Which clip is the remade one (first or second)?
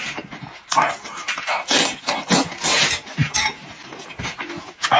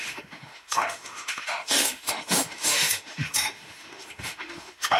second